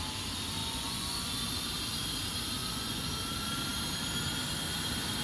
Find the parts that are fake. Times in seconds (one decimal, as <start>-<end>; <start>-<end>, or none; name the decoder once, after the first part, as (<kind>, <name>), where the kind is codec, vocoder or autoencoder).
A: 0.6-1.5 (vocoder, Vocos); 2.6-3.1